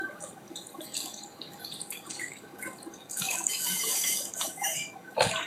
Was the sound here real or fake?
fake